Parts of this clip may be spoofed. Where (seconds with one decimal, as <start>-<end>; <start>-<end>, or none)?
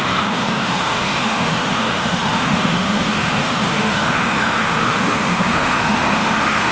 0.0-6.7